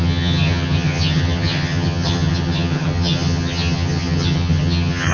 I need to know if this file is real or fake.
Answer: fake